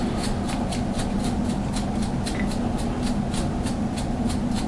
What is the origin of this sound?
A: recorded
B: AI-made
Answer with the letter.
A